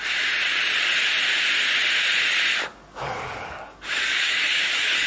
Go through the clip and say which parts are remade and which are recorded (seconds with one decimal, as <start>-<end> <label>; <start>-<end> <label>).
0.0-2.7 recorded; 2.7-5.1 remade